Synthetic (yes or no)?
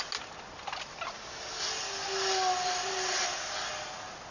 no